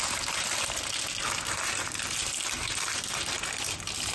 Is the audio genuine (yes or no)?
yes